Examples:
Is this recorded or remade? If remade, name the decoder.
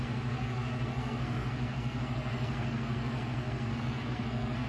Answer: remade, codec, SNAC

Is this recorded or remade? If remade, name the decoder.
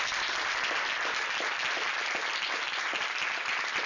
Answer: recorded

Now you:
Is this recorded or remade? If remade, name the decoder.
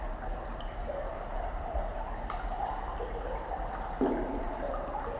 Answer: recorded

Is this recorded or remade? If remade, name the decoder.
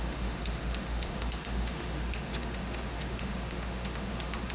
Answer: remade, autoencoder, DAC-VAE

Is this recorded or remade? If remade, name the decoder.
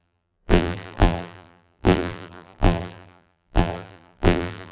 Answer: remade, vocoder, BigVGAN v2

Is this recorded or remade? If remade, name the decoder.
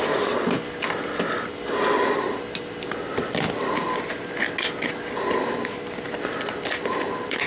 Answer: recorded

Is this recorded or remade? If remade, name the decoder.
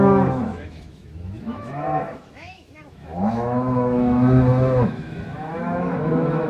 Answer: remade, autoencoder, DAC-VAE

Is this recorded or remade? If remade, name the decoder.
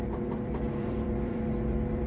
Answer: remade, vocoder, BigVGAN v2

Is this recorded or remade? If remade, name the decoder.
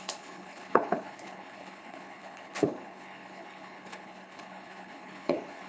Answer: remade, codec, HILCodec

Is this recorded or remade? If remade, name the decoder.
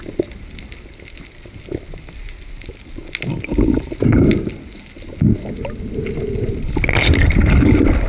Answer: recorded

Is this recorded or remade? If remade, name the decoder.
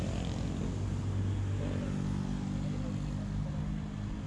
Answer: recorded